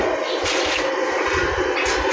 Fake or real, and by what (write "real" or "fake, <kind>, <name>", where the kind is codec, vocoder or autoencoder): real